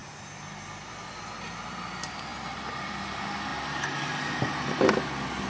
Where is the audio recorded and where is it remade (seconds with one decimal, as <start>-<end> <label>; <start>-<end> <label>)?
0.0-5.5 recorded